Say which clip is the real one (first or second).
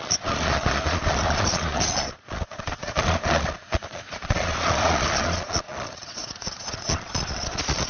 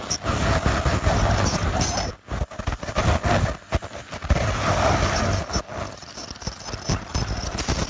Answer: second